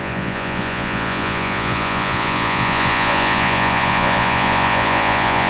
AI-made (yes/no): yes